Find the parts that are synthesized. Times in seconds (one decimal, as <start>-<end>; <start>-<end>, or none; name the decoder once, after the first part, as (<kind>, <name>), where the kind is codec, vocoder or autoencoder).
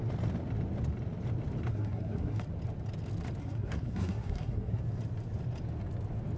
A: 1.7-2.4 (codec, SNAC); 3.4-4.8